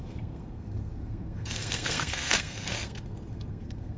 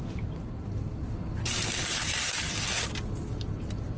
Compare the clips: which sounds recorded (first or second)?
second